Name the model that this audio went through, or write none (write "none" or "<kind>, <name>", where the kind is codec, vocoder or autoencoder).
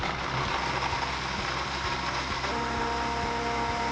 none